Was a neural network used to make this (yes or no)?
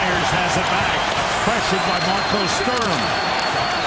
yes